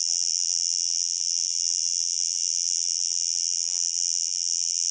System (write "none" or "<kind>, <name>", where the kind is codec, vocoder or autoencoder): vocoder, BigVGAN v2